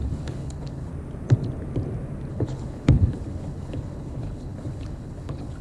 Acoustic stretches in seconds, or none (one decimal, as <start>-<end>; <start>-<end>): 0.9-2.3